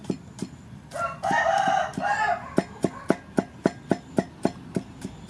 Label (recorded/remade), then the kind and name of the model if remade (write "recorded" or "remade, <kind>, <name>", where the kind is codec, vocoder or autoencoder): recorded